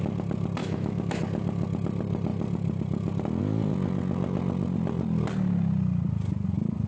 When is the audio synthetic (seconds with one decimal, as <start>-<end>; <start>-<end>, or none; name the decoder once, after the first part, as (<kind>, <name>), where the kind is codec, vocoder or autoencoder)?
0.6-1.2 (autoencoder, DAC-VAE)